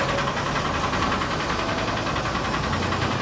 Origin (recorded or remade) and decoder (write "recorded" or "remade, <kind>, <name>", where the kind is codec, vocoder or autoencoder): recorded